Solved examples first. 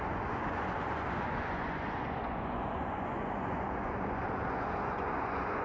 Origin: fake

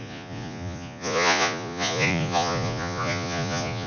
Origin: fake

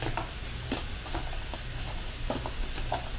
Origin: real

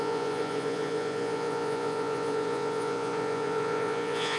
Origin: fake